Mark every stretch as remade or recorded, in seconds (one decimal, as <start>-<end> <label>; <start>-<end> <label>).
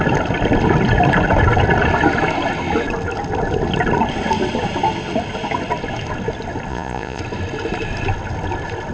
0.0-6.7 recorded; 6.7-7.2 remade; 7.2-8.9 recorded